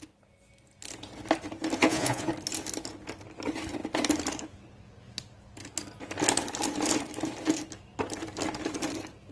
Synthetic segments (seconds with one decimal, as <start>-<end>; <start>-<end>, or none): 1.8-2.3